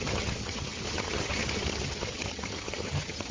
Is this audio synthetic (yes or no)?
yes